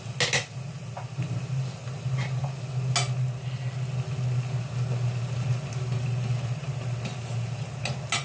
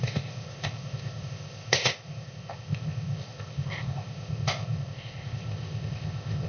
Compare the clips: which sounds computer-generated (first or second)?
second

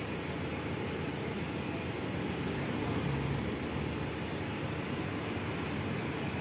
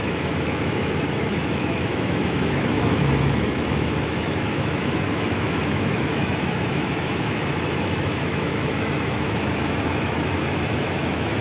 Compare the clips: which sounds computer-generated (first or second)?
second